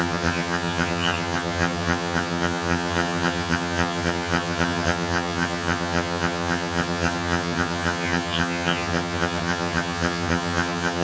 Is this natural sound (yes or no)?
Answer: no